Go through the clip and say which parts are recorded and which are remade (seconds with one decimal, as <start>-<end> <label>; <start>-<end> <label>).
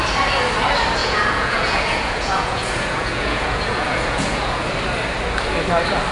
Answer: 0.0-1.0 recorded; 1.0-4.7 remade; 4.7-6.1 recorded